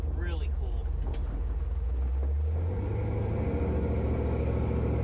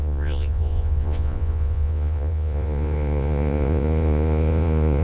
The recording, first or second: first